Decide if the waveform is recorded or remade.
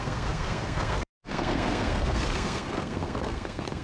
remade